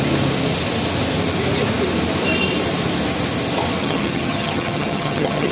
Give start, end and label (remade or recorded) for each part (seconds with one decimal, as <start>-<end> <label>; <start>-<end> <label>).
0.0-3.8 recorded; 3.8-5.5 remade